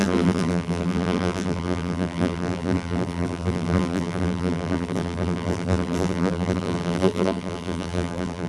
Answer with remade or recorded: remade